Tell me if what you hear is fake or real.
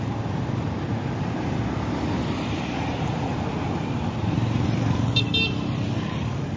real